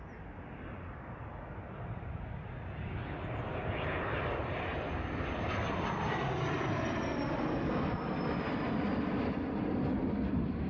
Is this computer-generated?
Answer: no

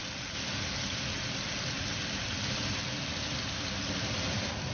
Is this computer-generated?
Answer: no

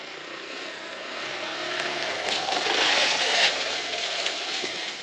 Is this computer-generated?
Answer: yes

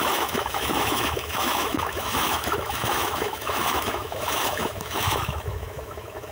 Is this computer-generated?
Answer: yes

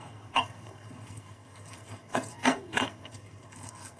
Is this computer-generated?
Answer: yes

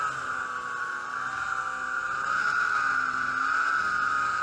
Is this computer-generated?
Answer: no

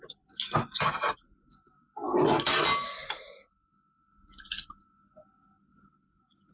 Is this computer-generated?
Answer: no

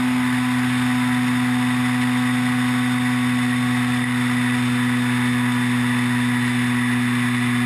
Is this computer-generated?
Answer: no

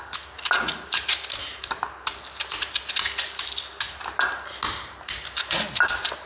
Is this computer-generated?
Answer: no